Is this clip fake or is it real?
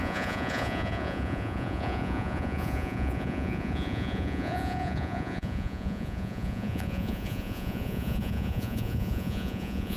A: fake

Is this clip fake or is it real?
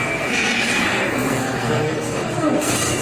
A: fake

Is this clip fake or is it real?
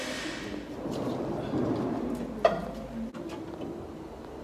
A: real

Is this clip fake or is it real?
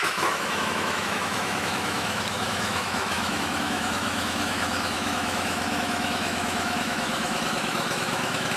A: fake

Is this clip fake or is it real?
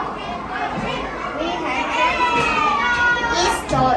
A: real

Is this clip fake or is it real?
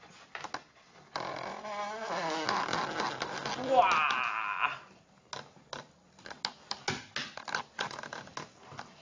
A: real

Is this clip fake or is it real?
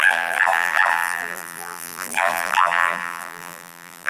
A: fake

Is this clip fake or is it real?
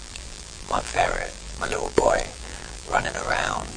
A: fake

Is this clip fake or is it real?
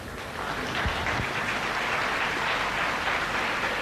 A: real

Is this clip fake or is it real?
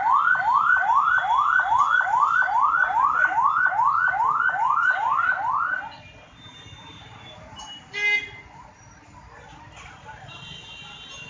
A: real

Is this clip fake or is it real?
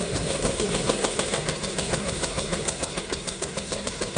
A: fake